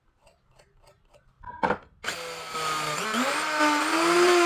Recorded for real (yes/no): yes